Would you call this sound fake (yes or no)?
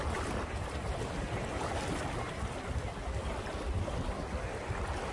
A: no